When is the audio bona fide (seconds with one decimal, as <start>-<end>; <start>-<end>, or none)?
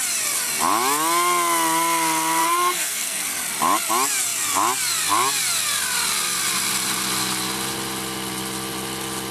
0.0-2.4; 3.3-9.3